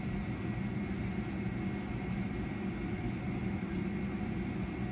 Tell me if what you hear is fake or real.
real